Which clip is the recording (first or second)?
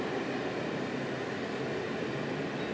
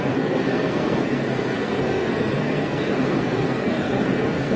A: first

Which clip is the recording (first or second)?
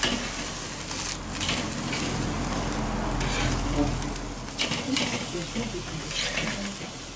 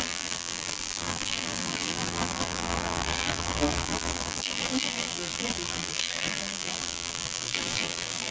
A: first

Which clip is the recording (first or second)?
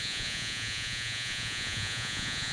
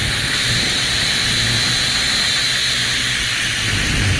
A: second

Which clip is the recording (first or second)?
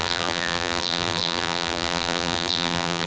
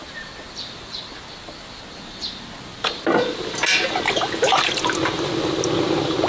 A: second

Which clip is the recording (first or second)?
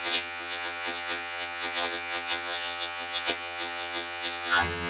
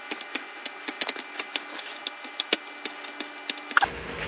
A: second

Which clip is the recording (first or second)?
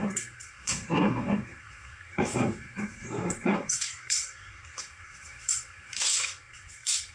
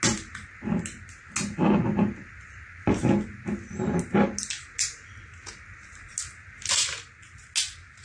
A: second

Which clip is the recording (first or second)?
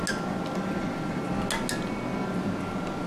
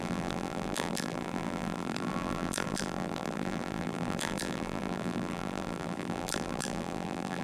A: first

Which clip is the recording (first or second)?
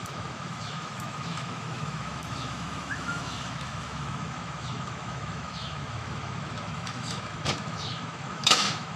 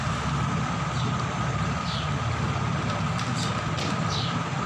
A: second